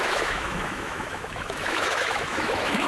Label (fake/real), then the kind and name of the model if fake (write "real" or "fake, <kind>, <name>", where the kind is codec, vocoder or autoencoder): fake, autoencoder, DAC-VAE